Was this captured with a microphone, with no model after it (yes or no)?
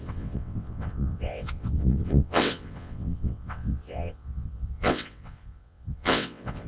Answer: no